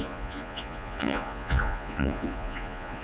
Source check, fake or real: fake